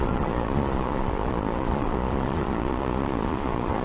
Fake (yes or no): yes